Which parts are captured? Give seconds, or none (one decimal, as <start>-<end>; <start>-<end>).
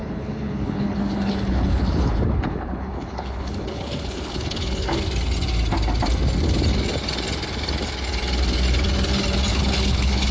5.0-9.5